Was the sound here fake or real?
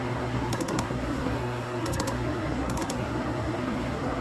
fake